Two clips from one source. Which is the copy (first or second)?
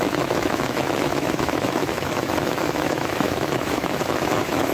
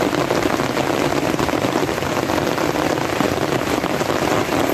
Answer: first